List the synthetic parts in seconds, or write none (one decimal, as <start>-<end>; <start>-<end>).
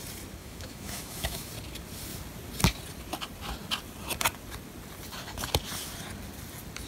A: 0.4-1.5